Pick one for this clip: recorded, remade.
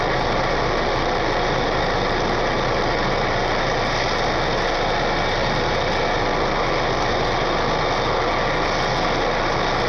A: recorded